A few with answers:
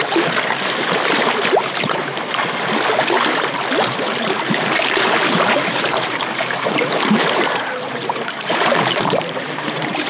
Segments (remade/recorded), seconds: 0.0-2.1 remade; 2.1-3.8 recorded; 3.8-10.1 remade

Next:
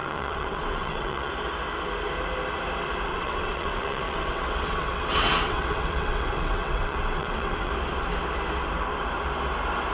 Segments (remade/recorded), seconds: 0.0-1.3 remade; 1.3-3.1 recorded; 3.1-7.7 remade; 7.7-9.9 recorded

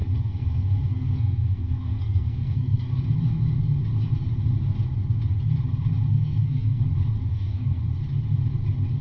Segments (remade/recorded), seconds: 0.0-3.0 remade; 3.0-6.1 recorded; 6.1-6.8 remade; 6.8-7.3 recorded; 7.3-7.8 remade; 7.8-9.0 recorded